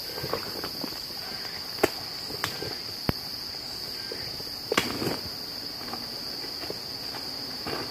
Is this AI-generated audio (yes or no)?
no